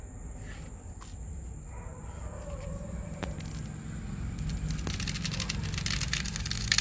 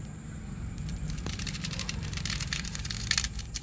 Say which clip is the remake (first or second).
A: second